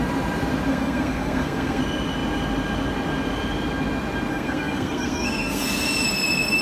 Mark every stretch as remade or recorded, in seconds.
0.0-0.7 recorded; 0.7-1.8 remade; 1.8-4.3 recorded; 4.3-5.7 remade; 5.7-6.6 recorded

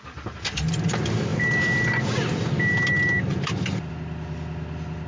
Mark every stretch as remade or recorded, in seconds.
0.0-5.1 recorded

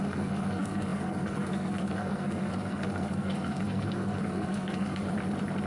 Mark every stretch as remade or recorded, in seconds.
0.0-5.0 remade; 5.0-5.7 recorded

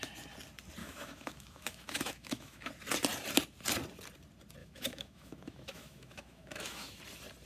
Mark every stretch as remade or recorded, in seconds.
0.0-0.8 recorded; 0.8-2.7 remade; 2.7-4.6 recorded; 4.6-7.0 remade; 7.0-7.5 recorded

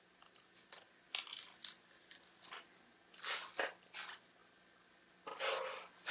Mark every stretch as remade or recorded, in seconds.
0.0-6.1 recorded

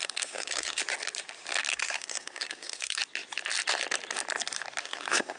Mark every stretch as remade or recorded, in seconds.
0.0-0.8 remade; 0.8-1.7 recorded; 1.7-3.0 remade; 3.0-4.8 recorded; 4.8-5.4 remade

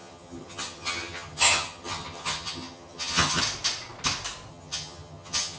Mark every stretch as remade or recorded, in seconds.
0.0-3.4 remade; 3.4-4.5 recorded; 4.5-5.6 remade

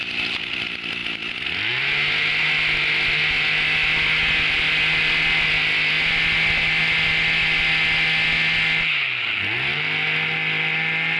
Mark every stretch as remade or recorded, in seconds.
0.0-11.2 recorded